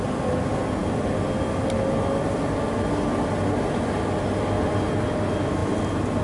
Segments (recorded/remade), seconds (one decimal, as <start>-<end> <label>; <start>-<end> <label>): 0.0-6.2 recorded